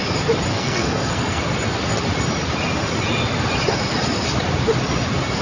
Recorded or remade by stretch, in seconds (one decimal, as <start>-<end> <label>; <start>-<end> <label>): 0.0-0.5 recorded; 0.5-1.4 remade; 1.4-5.4 recorded